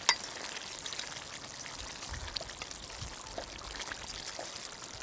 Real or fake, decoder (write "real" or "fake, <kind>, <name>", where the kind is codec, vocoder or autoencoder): real